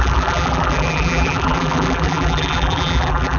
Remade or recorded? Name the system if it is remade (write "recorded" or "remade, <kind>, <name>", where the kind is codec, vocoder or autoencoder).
remade, vocoder, BigVGAN v2